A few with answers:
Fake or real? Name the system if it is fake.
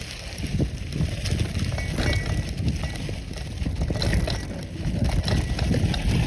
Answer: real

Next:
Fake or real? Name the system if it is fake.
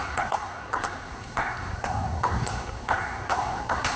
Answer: fake, codec, SNAC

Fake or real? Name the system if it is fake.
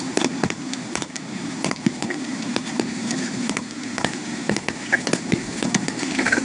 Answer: fake, codec, SNAC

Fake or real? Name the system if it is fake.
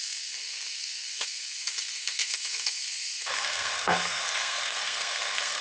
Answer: fake, codec, SNAC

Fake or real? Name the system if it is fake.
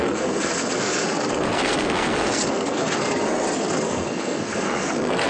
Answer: fake, codec, SNAC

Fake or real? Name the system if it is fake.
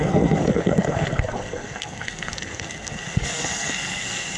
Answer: fake, codec, SNAC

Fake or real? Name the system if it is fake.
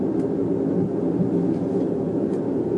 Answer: real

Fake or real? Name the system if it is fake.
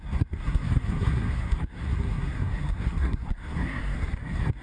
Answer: fake, codec, SNAC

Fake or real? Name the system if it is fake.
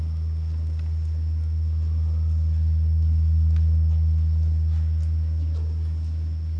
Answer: real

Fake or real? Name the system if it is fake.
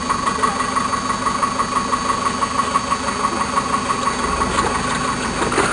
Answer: real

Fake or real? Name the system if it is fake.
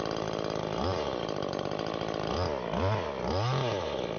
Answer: real